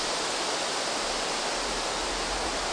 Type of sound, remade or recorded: recorded